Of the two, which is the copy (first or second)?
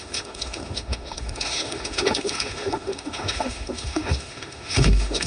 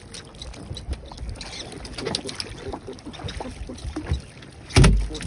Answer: first